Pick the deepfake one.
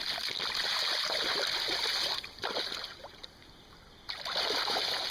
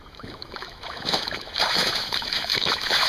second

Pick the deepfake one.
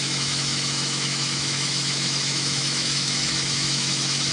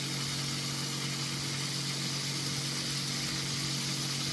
first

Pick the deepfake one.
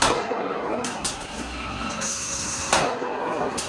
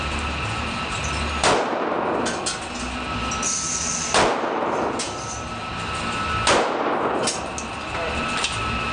first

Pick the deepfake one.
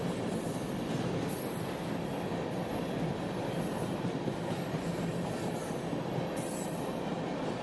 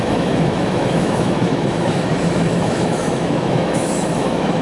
second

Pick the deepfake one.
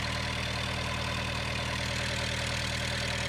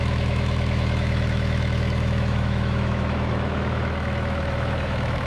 second